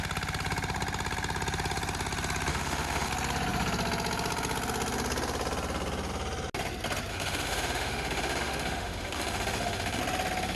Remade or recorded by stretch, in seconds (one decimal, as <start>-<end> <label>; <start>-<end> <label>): 0.0-2.5 recorded; 2.5-3.1 remade; 3.1-7.1 recorded; 7.1-10.0 remade; 10.0-10.6 recorded